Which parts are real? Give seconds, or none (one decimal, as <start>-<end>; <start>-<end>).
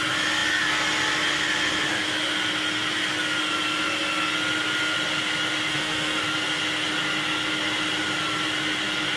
0.0-5.7; 6.2-9.2